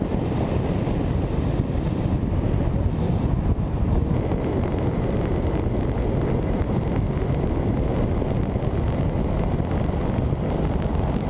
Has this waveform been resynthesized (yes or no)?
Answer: no